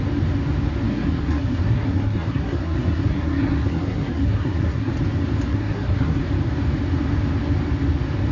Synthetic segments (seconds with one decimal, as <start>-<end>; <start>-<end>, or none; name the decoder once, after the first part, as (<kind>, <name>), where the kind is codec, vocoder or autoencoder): 0.9-4.9 (codec, SNAC); 5.5-6.2